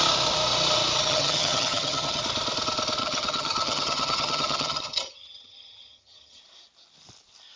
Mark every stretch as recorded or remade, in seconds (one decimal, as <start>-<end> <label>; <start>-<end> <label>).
0.0-1.0 recorded; 1.0-2.2 remade; 2.2-3.0 recorded; 3.0-6.4 remade; 6.4-7.6 recorded